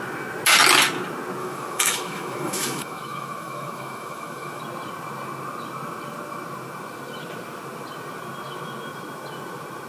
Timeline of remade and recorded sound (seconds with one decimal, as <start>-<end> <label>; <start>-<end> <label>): 0.0-1.4 recorded; 1.4-4.6 remade; 4.6-9.9 recorded